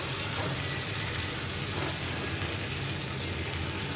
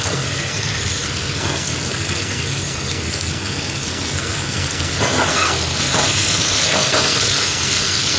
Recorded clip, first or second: first